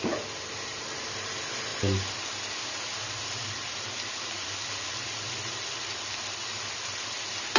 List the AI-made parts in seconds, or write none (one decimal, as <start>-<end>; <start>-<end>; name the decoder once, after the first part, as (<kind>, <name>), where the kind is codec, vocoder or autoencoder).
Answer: none